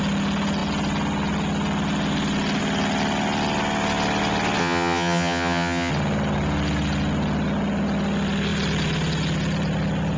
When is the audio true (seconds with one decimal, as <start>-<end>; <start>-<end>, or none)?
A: 0.0-4.6; 5.9-10.2